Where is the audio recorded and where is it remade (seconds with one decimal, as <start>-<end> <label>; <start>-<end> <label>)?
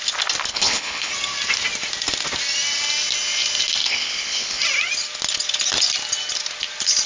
0.0-0.5 recorded; 0.5-1.1 remade; 1.1-3.8 recorded; 3.8-4.6 remade; 4.6-7.1 recorded